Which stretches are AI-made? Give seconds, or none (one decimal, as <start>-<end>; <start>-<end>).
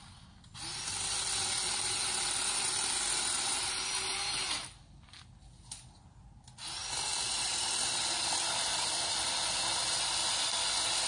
none